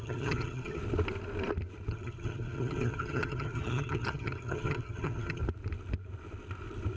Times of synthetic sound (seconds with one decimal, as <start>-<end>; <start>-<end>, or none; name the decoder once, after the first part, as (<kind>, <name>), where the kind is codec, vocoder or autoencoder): 0.0-0.8 (vocoder, HiFi-GAN); 1.9-5.4